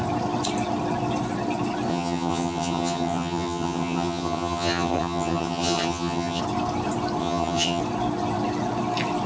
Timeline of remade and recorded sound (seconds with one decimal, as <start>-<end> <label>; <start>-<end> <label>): 0.0-1.9 recorded; 1.9-6.4 remade; 6.4-7.2 recorded; 7.2-7.8 remade; 7.8-9.3 recorded